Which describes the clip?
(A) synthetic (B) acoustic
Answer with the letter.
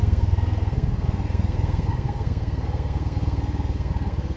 A